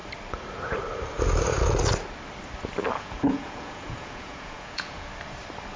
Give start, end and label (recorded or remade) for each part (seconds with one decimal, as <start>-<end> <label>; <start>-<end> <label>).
0.0-3.0 recorded; 3.0-5.1 remade; 5.1-5.8 recorded